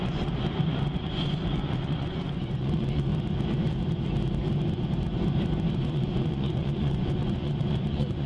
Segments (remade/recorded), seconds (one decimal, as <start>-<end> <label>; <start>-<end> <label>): 0.0-3.1 remade; 3.1-5.7 recorded; 5.7-8.3 remade